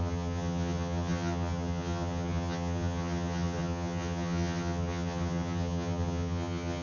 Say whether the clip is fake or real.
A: fake